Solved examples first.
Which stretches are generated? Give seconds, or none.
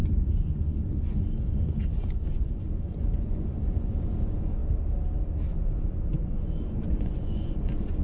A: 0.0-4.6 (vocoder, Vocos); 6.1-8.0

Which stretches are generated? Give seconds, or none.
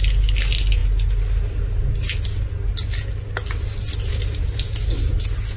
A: none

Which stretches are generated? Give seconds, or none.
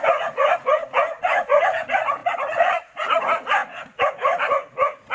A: 0.0-5.1 (vocoder, Vocos)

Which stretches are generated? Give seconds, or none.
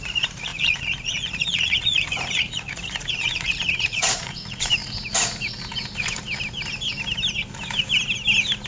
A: 0.0-4.8 (vocoder, Vocos)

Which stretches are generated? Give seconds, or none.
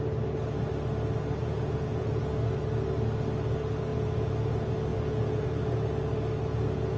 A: 1.4-2.2 (vocoder, Vocos); 3.9-4.5; 4.9-5.8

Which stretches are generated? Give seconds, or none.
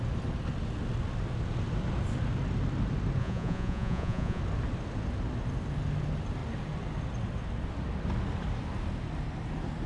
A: 3.2-4.4 (vocoder, Vocos)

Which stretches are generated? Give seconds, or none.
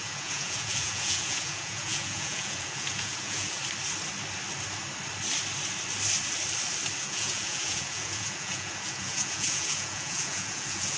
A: 0.0-3.6 (vocoder, Vocos); 7.0-11.0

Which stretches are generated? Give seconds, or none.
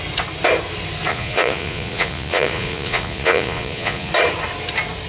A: 1.1-4.1 (vocoder, Vocos)